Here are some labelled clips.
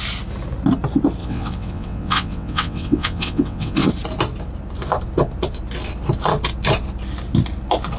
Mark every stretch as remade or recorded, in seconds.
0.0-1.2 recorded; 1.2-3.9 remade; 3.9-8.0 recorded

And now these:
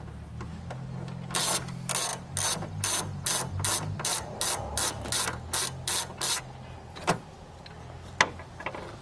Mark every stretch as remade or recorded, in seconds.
0.0-9.0 recorded